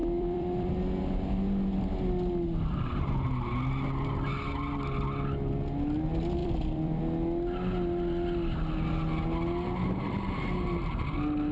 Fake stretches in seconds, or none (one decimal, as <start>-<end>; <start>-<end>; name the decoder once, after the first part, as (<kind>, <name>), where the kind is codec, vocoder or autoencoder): 0.0-0.7 (vocoder, BigVGAN v2); 6.4-7.0